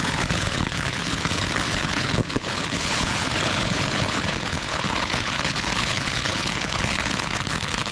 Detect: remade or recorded remade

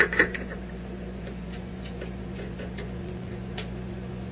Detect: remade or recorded remade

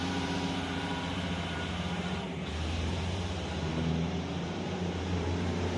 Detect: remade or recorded remade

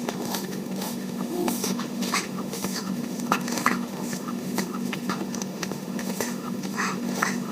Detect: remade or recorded remade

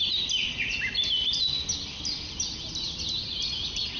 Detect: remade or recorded recorded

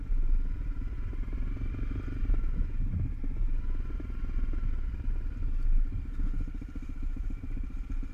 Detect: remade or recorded recorded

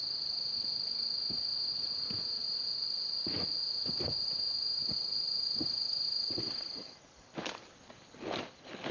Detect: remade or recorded recorded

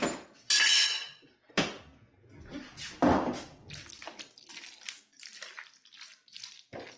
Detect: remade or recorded recorded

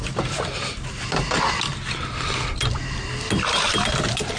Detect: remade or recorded recorded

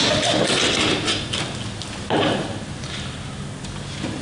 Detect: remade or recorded recorded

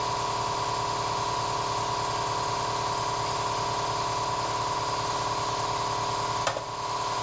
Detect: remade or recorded recorded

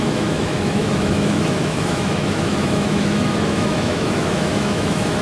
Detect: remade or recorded remade